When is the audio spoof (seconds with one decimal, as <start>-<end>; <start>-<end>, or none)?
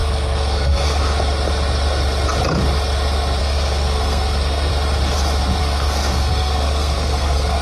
0.0-1.0; 3.4-4.7; 5.6-7.6